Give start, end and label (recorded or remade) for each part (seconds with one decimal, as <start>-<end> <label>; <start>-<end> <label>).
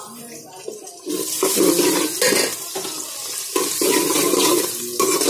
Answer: 0.0-5.3 recorded